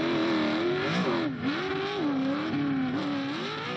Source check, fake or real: real